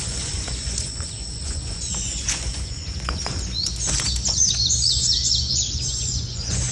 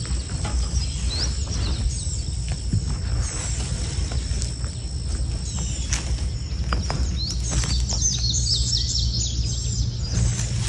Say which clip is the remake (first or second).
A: first